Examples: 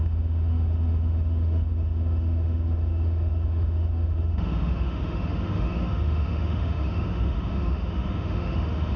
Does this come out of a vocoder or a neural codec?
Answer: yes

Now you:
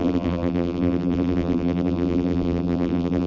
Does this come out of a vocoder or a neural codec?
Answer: yes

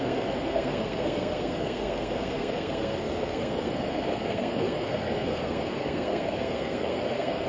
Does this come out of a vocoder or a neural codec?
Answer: yes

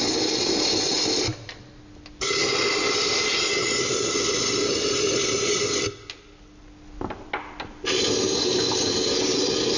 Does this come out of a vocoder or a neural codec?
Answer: no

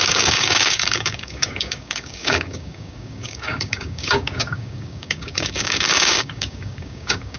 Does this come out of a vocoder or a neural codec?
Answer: yes